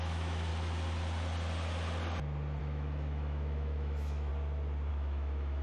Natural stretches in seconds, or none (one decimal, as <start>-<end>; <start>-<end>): 0.5-2.6; 4.3-4.9